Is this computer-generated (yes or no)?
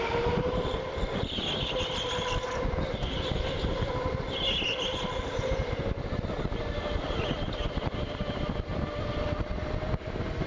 no